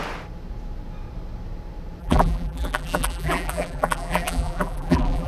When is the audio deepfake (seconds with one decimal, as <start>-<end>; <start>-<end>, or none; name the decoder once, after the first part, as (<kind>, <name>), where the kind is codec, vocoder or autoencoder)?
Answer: 2.0-5.3 (vocoder, BigVGAN v2)